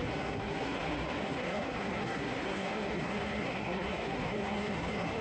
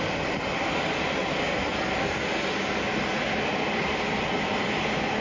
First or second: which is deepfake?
first